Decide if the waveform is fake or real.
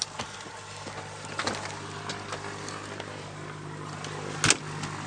real